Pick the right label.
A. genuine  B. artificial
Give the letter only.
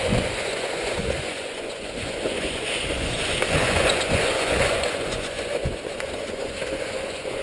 B